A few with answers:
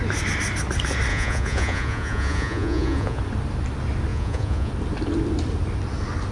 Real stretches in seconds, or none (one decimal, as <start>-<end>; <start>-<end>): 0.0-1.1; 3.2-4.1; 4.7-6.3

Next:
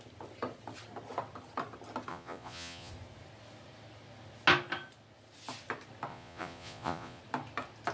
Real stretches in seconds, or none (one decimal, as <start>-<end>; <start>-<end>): 0.0-2.1; 2.9-6.1; 7.2-7.9

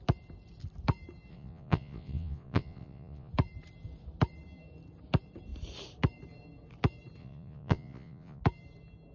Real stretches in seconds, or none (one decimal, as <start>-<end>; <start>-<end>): 0.0-1.3; 3.3-7.2; 8.4-9.1